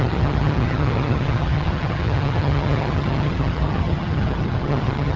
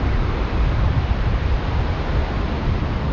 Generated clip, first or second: first